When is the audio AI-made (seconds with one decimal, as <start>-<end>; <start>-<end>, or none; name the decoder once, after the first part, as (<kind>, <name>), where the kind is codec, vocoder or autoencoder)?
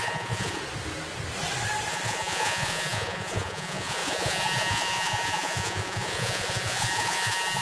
0.0-0.6 (vocoder, Vocos); 1.9-7.6